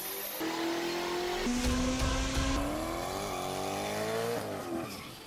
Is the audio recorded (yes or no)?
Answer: yes